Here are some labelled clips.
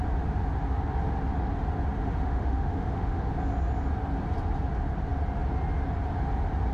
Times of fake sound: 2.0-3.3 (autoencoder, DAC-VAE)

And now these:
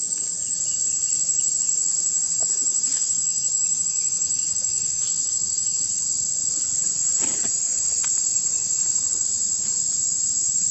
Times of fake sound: 2.4-5.8 (autoencoder, DAC-VAE)

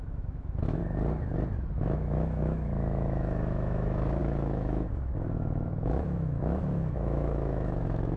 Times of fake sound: 0.0-0.8 (autoencoder, DAC-VAE); 1.7-8.2

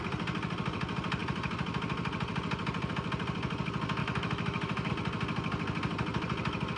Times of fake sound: 4.0-4.9 (autoencoder, DAC-VAE)

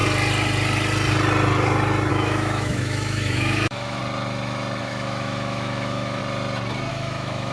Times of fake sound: 2.1-4.0 (autoencoder, DAC-VAE); 4.8-6.2; 6.9-7.5

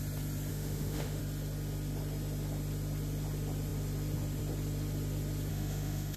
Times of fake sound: 0.5-1.2 (autoencoder, DAC-VAE); 5.5-6.2

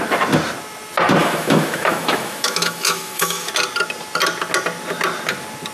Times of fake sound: 1.2-3.5 (autoencoder, DAC-VAE)